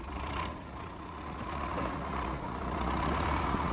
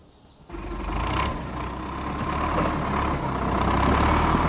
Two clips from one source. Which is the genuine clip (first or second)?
second